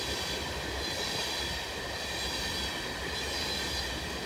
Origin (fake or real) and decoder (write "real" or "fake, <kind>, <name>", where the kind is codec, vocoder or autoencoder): real